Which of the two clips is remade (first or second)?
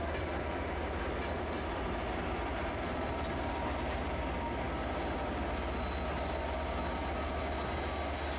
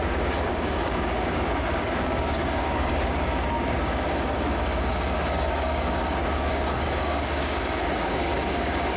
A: second